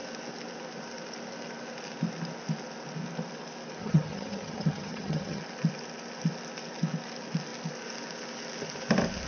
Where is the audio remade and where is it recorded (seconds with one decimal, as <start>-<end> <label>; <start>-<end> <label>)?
0.0-3.8 recorded; 3.8-5.4 remade; 5.4-9.3 recorded